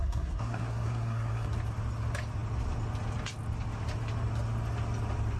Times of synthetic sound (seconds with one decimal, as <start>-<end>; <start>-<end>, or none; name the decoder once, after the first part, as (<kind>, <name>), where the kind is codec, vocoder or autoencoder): 0.0-1.5 (codec, SNAC)